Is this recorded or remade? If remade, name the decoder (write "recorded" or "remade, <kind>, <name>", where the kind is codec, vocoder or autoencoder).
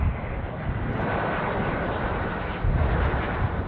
recorded